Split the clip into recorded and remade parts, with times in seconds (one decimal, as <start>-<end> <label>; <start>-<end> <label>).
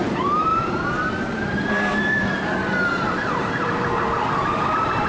0.0-5.1 remade